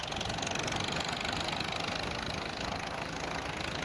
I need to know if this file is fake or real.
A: real